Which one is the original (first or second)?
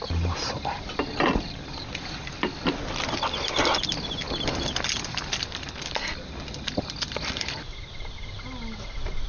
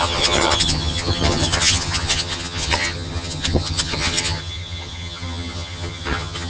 first